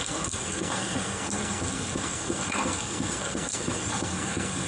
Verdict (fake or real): fake